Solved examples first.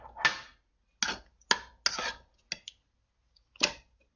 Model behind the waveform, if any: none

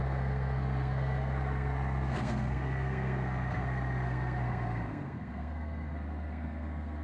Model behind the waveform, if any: codec, SNAC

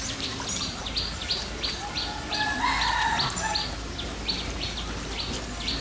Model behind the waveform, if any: none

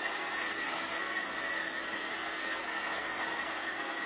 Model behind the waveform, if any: codec, SNAC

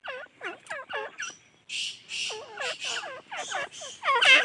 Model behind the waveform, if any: none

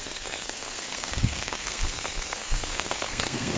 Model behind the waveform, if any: codec, SNAC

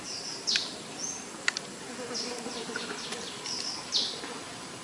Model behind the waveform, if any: none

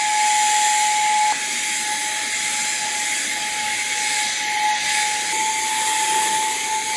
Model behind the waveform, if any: none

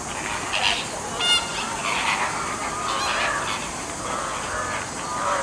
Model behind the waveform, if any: none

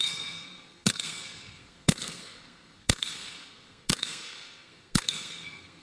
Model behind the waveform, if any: codec, SNAC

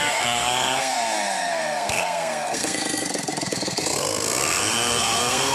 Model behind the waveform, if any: codec, SNAC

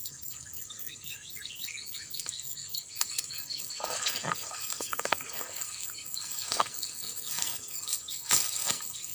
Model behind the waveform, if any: codec, SNAC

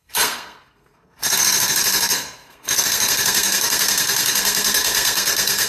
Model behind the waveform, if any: codec, SNAC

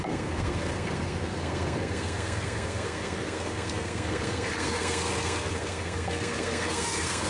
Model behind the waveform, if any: codec, SNAC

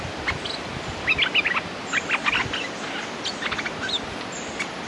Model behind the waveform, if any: none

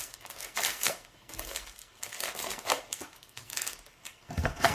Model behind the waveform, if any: codec, SNAC